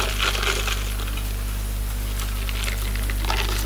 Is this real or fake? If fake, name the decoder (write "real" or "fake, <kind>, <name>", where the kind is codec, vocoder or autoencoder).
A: real